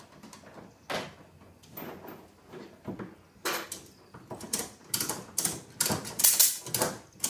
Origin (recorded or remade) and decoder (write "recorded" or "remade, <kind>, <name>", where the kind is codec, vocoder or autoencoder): recorded